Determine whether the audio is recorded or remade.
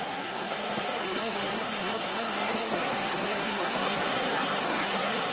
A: remade